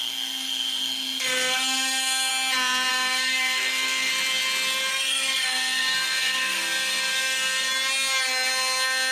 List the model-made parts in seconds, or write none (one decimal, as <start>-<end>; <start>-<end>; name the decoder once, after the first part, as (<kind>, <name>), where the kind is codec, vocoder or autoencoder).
0.0-2.3 (codec, SNAC); 2.9-4.1; 4.9-7.7